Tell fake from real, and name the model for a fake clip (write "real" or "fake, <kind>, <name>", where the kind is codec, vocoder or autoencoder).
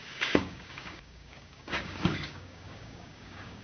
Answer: fake, codec, DAC